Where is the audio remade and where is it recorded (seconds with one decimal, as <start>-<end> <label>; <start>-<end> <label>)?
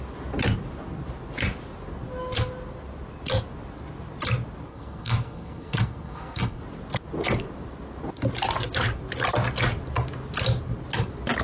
0.0-4.7 recorded; 4.7-6.6 remade; 6.6-11.4 recorded